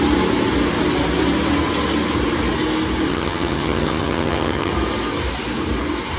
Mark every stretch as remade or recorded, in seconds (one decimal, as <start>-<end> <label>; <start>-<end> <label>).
0.0-3.1 recorded; 3.1-4.7 remade; 4.7-6.2 recorded